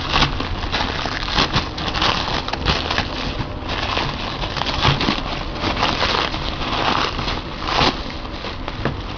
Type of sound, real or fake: real